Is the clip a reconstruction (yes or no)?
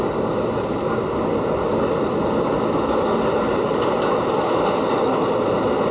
no